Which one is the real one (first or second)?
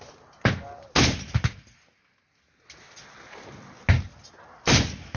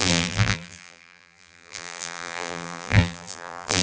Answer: first